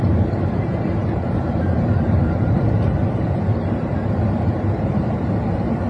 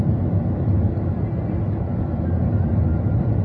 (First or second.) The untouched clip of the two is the second